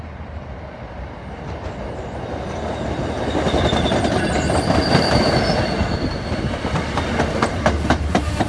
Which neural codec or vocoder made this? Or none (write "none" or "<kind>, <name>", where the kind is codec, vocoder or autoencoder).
none